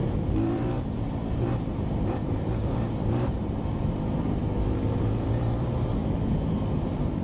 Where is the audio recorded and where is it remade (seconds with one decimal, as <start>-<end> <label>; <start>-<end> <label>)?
0.0-6.0 remade; 6.0-6.7 recorded; 6.7-7.2 remade